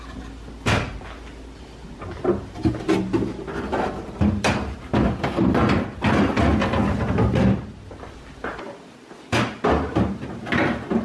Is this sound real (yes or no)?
yes